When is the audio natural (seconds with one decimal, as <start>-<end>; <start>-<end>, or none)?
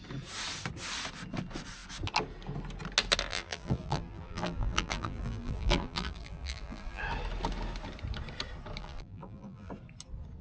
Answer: 0.0-3.3; 7.0-8.8; 9.7-10.4